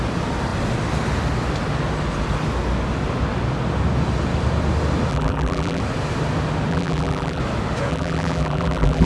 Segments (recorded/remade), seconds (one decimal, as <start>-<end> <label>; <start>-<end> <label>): 0.0-5.1 recorded; 5.1-5.8 remade; 5.8-6.7 recorded; 6.7-7.4 remade; 7.4-7.9 recorded; 7.9-9.1 remade